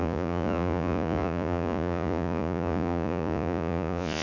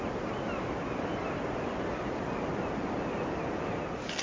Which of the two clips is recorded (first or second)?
second